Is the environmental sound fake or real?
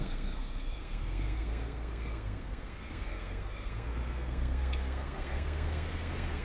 fake